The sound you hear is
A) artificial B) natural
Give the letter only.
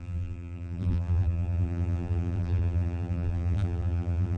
A